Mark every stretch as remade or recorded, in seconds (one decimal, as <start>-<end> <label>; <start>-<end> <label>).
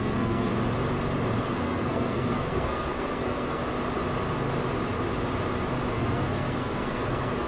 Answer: 0.0-0.5 remade; 0.5-1.4 recorded; 1.4-3.6 remade; 3.6-5.9 recorded; 5.9-7.5 remade